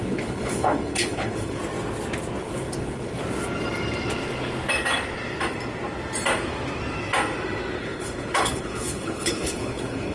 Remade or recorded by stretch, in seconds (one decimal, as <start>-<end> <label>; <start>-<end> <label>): 0.0-1.6 remade; 1.6-2.4 recorded; 2.4-3.2 remade; 3.2-7.8 recorded; 7.8-10.1 remade